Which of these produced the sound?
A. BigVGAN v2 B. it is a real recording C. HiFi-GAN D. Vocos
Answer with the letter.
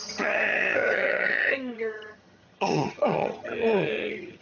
C